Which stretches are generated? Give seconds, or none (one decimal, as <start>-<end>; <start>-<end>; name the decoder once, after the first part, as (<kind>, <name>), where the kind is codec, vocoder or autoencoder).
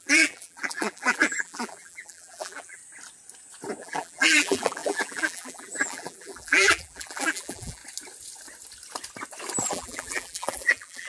0.0-2.8 (vocoder, BigVGAN v2); 3.8-7.8; 9.7-11.1